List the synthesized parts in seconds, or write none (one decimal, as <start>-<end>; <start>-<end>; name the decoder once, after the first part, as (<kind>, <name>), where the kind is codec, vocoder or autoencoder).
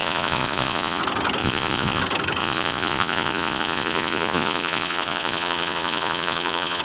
0.0-1.0 (vocoder, Vocos); 1.4-2.0; 2.4-6.8